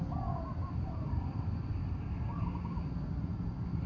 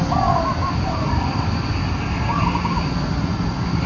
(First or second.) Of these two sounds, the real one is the second